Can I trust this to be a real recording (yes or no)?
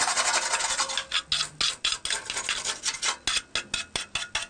yes